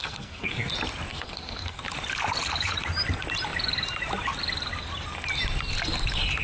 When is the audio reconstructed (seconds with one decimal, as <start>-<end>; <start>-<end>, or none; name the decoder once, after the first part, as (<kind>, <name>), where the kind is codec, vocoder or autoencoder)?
0.0-0.7 (codec, SNAC); 1.1-1.8